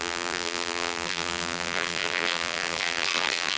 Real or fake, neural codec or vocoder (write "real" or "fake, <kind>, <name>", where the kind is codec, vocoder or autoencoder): fake, vocoder, BigVGAN v2